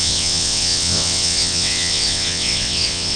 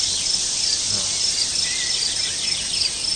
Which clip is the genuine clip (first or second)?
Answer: second